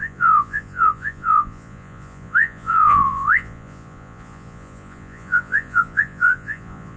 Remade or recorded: remade